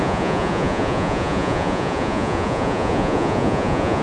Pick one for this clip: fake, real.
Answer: fake